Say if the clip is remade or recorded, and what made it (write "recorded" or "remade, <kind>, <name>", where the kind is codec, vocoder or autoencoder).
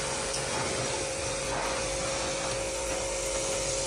remade, vocoder, Vocos